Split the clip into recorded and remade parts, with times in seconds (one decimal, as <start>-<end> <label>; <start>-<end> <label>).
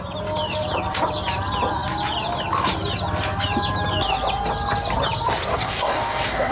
0.0-5.5 recorded; 5.5-6.5 remade